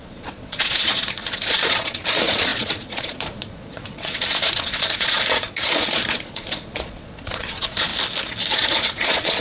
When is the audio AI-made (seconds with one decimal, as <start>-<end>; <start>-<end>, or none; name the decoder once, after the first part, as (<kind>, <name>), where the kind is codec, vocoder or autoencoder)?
0.0-7.9 (vocoder, Vocos); 8.5-9.4